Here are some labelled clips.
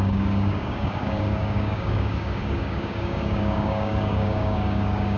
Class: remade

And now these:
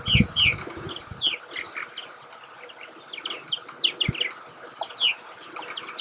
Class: recorded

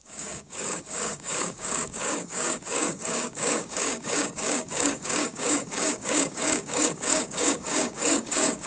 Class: remade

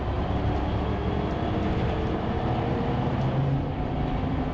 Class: recorded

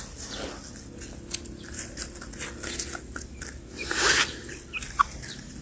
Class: recorded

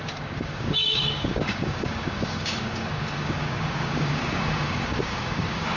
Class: remade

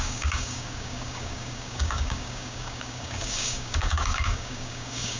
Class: remade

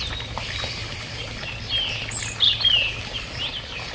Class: recorded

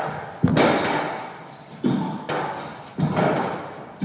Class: recorded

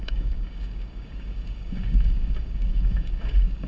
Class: remade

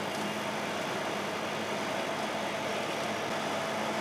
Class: recorded